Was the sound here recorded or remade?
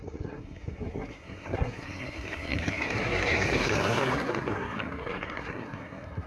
remade